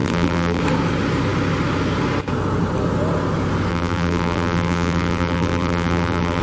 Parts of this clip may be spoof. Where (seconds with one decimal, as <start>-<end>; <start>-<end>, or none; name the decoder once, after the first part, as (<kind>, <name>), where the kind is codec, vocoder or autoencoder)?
0.0-0.6 (vocoder, BigVGAN v2); 3.7-6.4